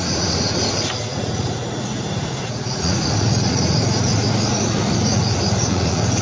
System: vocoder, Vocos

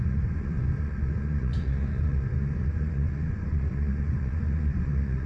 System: vocoder, Vocos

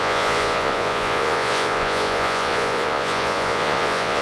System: vocoder, Vocos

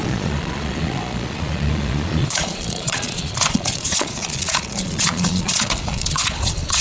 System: vocoder, Vocos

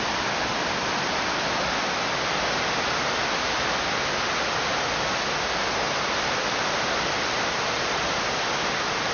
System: none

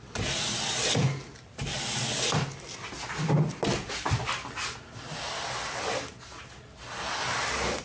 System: none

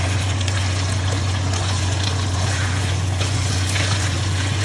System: vocoder, Vocos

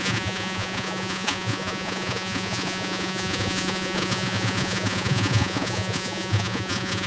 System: vocoder, Vocos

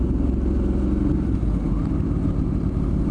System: none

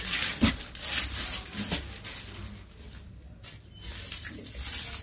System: none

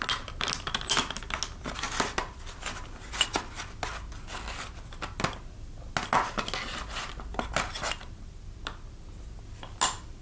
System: none